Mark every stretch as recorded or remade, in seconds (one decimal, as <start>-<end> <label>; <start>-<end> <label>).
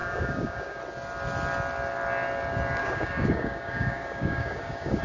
0.0-0.8 remade; 0.8-2.8 recorded; 2.8-5.0 remade